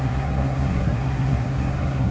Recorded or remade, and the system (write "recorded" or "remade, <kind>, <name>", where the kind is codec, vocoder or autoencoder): remade, codec, SNAC